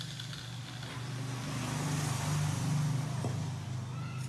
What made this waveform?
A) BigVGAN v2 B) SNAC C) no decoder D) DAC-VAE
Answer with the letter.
C